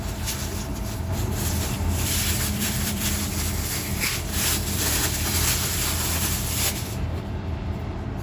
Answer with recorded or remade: remade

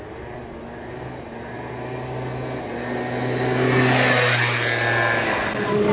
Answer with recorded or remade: recorded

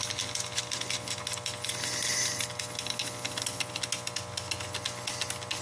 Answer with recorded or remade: recorded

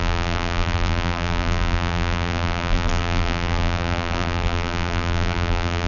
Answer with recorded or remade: remade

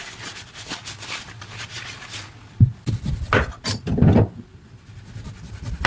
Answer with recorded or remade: recorded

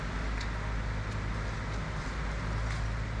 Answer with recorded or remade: recorded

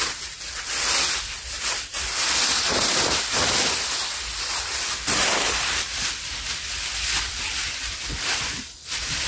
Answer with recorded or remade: recorded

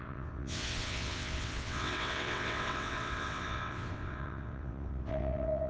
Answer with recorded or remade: remade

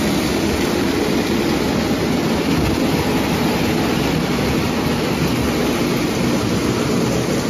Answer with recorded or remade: recorded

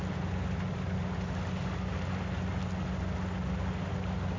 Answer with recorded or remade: recorded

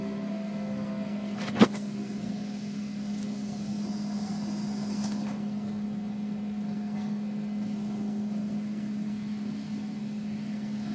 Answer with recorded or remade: remade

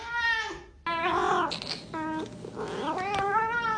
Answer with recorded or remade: recorded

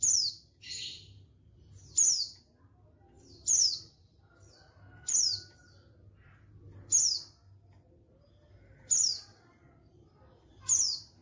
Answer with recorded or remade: recorded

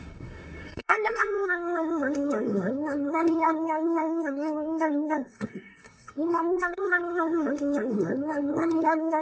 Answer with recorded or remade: remade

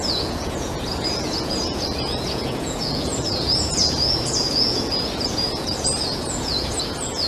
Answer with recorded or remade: remade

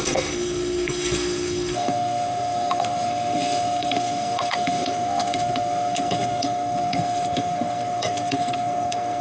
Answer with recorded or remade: remade